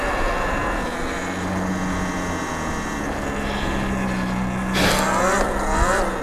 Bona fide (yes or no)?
yes